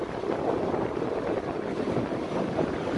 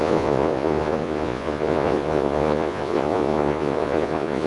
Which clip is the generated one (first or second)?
second